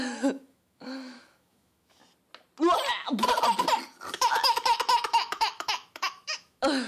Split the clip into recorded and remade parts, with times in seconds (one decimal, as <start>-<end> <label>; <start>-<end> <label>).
0.0-2.0 remade; 2.0-4.1 recorded; 4.1-6.9 remade